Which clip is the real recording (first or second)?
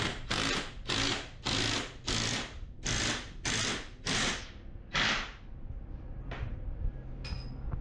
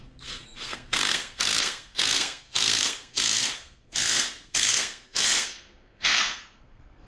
first